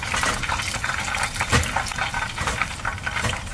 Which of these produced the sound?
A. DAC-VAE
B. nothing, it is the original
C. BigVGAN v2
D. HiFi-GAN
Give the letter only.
B